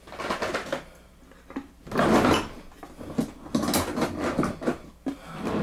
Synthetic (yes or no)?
no